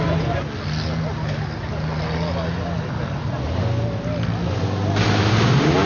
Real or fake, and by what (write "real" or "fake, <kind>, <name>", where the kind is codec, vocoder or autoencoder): real